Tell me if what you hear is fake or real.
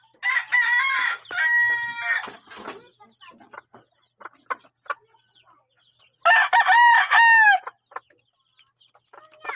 real